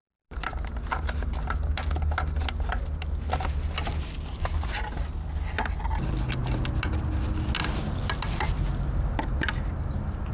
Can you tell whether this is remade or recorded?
recorded